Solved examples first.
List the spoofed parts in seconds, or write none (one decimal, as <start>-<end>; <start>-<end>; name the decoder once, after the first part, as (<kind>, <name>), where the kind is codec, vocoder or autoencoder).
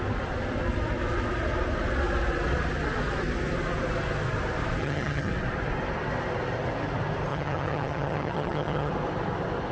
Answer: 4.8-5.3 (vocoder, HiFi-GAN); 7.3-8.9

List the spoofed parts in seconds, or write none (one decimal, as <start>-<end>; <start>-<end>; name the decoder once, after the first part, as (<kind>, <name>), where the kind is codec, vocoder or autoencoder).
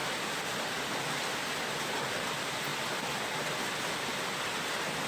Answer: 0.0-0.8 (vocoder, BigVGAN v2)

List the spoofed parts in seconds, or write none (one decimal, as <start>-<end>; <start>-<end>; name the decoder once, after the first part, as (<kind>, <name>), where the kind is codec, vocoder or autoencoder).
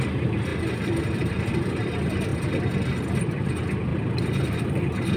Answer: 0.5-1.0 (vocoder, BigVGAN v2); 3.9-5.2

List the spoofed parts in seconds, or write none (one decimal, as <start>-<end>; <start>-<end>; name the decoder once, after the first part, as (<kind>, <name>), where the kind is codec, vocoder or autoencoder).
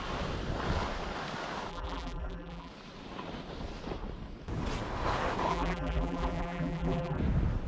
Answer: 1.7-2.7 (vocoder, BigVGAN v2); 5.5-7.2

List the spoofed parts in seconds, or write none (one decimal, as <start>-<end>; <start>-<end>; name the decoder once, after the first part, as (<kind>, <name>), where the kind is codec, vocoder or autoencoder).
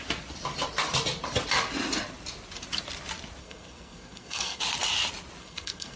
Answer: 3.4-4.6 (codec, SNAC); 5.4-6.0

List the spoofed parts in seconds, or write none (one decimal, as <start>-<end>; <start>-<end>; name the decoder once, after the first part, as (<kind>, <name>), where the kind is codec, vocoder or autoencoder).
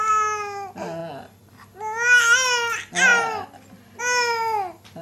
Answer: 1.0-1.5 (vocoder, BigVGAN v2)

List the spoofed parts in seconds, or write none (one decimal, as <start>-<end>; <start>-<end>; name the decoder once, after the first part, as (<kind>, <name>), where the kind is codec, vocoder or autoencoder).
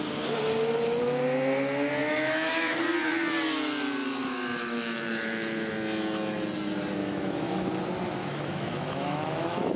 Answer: 2.0-2.8 (autoencoder, DAC-VAE); 4.2-5.7; 7.0-7.7; 8.2-9.8